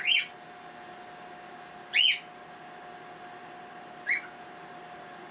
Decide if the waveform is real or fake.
real